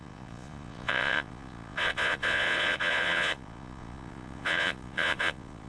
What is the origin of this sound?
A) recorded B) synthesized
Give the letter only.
B